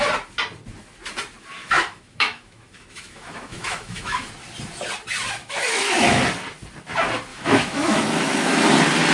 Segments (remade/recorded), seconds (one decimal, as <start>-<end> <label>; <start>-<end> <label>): 0.0-1.6 recorded; 1.6-4.3 remade; 4.3-5.4 recorded; 5.4-6.2 remade; 6.2-7.3 recorded; 7.3-8.6 remade; 8.6-9.1 recorded